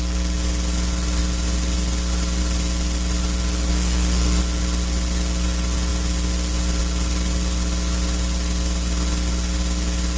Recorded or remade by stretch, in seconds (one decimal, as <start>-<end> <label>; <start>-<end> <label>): 0.0-3.7 recorded; 3.7-4.4 remade; 4.4-10.2 recorded